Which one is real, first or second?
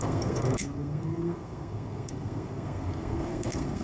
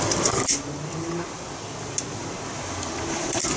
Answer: second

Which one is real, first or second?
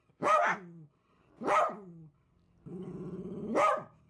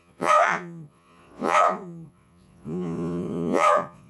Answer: first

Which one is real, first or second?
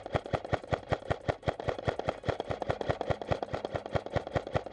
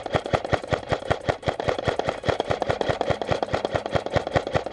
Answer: first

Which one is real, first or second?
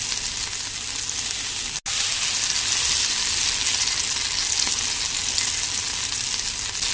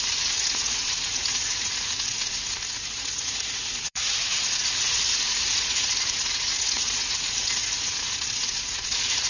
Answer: first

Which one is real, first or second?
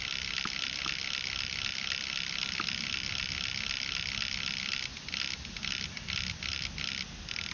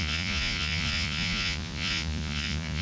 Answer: first